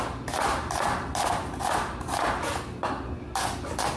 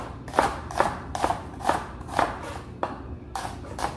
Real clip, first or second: first